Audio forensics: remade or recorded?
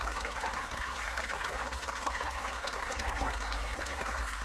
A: remade